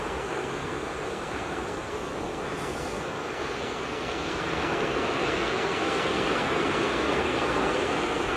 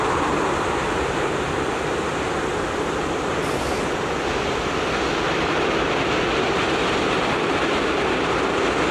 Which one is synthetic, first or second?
first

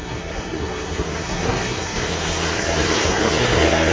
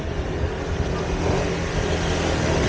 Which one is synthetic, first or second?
first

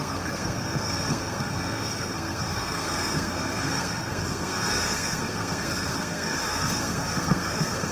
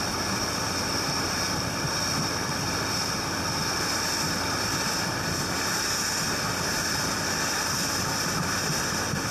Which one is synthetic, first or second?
first